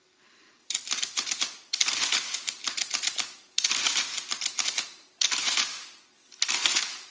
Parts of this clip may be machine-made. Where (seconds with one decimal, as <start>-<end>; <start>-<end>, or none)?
0.4-3.7